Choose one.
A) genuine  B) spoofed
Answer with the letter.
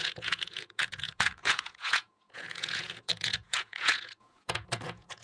B